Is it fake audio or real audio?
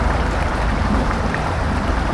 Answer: fake